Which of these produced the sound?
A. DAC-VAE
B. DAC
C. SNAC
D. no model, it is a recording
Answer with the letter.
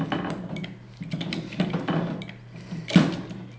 D